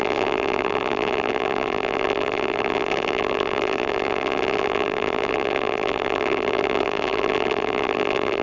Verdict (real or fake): fake